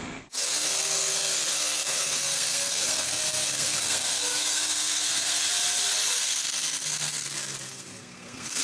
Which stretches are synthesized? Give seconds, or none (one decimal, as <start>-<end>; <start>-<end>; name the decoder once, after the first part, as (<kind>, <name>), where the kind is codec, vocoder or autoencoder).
0.0-5.5 (codec, SNAC); 6.2-8.6